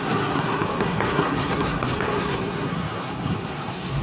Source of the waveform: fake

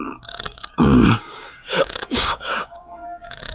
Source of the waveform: fake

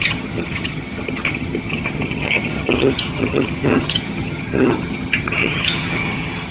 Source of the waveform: fake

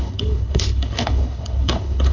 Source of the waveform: fake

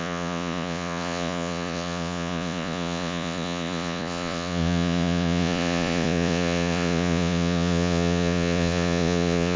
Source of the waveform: fake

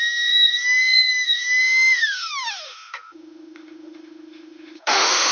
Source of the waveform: fake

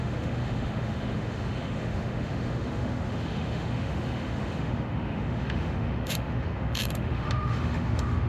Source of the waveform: fake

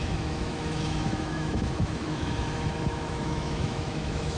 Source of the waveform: fake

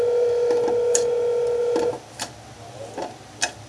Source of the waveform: real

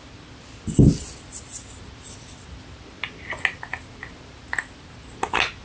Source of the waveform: real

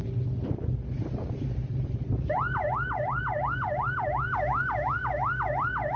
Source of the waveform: real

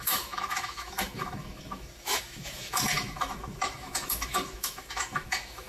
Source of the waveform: fake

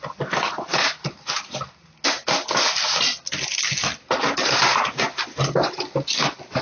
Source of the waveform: real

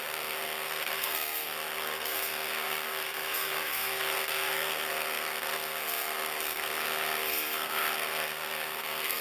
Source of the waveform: fake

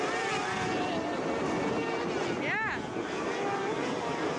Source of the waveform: real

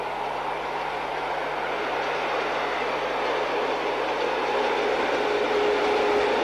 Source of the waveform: real